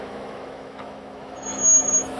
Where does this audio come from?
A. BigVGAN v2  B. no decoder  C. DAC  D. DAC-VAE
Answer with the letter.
D